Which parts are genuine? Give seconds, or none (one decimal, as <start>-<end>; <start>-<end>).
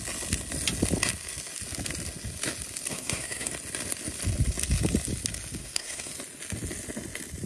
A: 0.0-2.9; 3.5-5.6; 6.1-7.5